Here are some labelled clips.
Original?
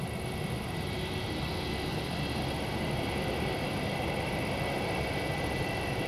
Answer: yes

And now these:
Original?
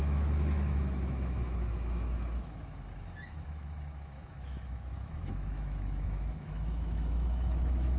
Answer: no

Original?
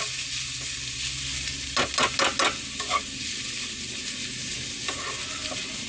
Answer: yes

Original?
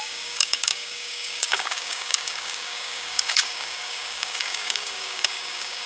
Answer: no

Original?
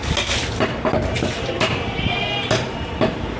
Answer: yes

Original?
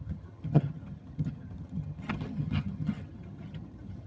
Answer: no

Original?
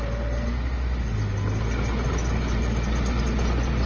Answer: yes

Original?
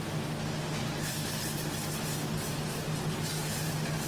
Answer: yes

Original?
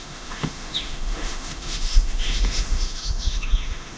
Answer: no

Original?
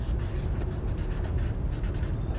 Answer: yes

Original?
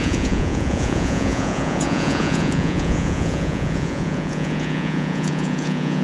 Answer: no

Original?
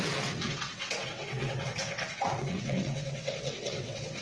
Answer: no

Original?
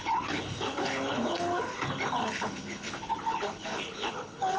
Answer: no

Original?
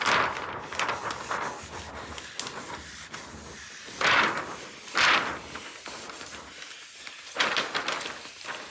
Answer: yes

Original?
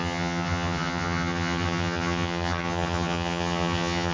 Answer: no